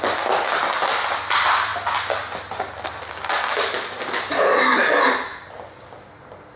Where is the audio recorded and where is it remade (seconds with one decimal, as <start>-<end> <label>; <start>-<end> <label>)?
0.0-6.6 recorded